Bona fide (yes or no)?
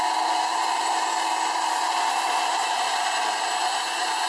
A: yes